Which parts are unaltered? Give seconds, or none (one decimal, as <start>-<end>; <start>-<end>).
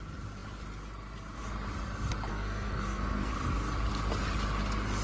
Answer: 0.0-2.3; 3.3-5.0